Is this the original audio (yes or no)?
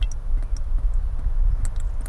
yes